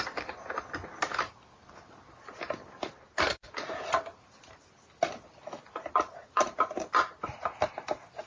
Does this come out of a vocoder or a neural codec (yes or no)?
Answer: no